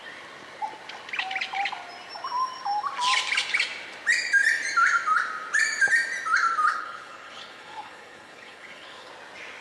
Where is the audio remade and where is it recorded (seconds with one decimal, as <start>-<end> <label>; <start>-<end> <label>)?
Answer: 0.0-6.7 recorded; 6.7-9.1 remade; 9.1-9.6 recorded